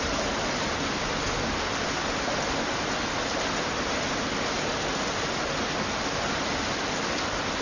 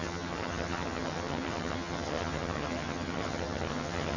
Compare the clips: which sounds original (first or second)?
first